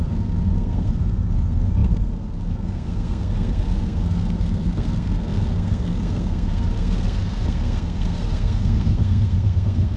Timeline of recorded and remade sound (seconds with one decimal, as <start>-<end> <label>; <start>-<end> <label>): 0.0-10.0 remade